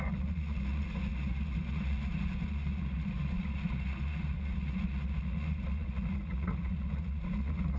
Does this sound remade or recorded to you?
remade